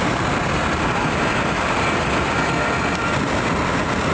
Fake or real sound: real